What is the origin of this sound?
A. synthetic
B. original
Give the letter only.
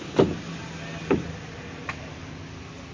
B